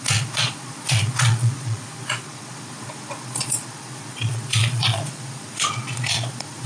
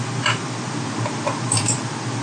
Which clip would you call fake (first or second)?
first